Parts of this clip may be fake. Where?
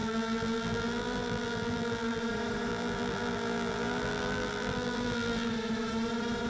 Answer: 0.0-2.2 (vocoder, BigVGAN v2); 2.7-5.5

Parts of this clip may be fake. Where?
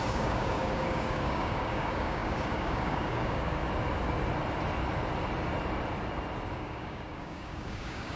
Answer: 0.0-3.6 (codec, DAC); 6.5-8.2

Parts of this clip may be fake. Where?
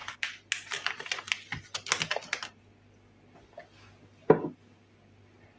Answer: none